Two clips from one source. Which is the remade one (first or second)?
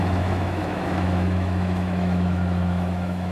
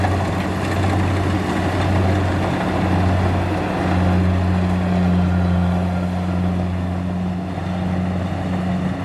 first